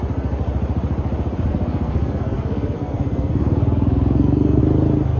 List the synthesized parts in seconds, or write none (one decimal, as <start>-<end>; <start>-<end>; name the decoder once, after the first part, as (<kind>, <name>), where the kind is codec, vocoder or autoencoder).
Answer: 1.5-4.6 (codec, SNAC)